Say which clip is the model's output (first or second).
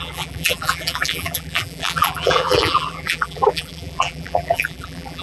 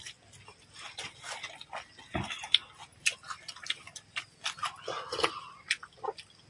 first